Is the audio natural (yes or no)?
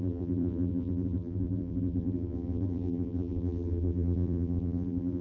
no